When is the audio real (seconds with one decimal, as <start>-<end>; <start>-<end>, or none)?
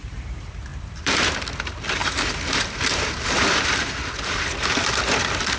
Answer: 0.0-0.7; 1.3-2.0; 3.9-5.6